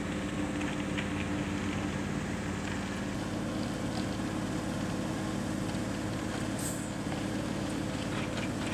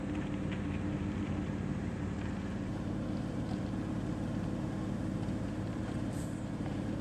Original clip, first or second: first